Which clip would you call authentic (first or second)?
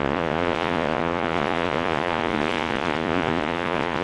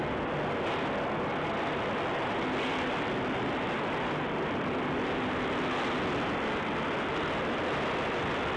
second